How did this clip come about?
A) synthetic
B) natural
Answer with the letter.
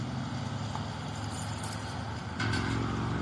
B